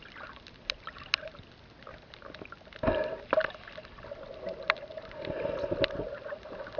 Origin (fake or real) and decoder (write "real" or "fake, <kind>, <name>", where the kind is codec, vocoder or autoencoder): real